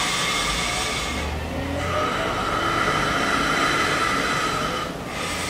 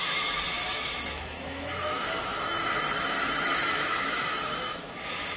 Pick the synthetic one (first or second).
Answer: second